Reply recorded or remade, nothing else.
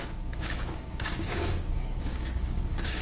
remade